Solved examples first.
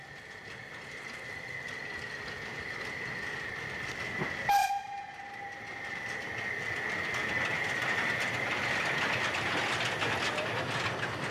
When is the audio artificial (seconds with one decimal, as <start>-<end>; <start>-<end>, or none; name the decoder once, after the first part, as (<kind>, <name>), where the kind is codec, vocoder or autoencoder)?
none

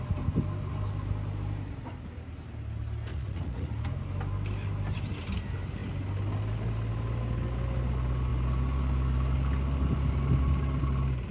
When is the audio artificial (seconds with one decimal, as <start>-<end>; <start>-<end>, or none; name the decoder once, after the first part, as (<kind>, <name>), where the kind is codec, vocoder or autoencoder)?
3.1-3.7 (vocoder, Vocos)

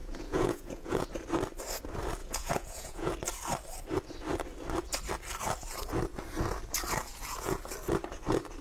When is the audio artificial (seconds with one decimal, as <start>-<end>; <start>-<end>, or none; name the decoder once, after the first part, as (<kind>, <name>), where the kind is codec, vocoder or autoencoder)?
0.0-1.1 (vocoder, Vocos); 2.2-3.1; 7.1-7.6